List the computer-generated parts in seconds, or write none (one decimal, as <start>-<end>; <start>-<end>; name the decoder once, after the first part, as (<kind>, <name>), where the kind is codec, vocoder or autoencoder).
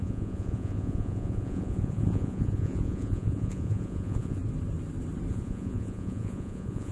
0.0-4.4 (vocoder, Vocos); 5.3-6.9